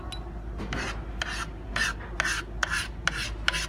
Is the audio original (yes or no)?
yes